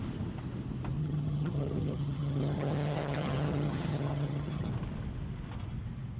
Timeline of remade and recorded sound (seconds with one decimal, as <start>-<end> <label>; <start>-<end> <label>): 0.0-1.0 recorded; 1.0-4.7 remade; 4.7-6.2 recorded